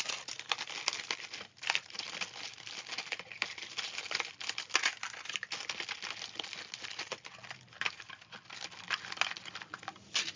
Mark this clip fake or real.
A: real